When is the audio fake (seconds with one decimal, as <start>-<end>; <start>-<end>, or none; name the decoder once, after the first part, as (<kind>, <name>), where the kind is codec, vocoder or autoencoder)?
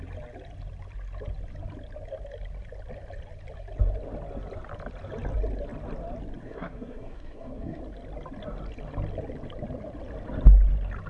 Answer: 6.4-7.8 (codec, SNAC)